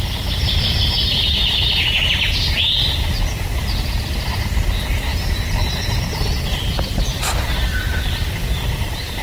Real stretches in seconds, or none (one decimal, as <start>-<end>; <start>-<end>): 0.0-9.2